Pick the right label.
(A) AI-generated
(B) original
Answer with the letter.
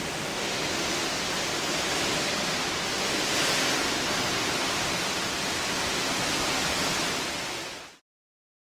B